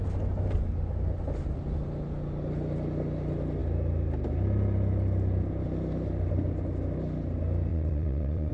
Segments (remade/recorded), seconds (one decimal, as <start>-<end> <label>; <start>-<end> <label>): 0.0-7.7 recorded; 7.7-8.5 remade